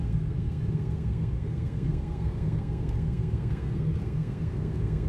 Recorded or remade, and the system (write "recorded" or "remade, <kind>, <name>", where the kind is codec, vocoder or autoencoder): remade, codec, SNAC